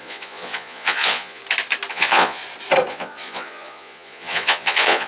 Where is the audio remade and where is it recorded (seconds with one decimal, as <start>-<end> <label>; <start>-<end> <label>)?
0.0-1.4 remade; 1.4-1.9 recorded; 1.9-2.4 remade; 2.4-2.9 recorded; 2.9-5.1 remade